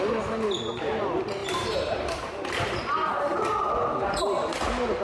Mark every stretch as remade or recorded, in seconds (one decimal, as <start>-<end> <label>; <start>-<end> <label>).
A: 0.0-1.4 recorded; 1.4-2.4 remade; 2.4-5.0 recorded